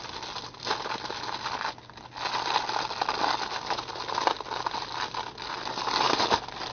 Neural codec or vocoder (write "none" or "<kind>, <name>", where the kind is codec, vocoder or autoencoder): none